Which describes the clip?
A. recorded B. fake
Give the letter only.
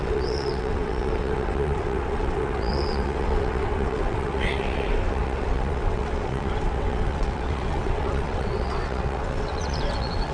B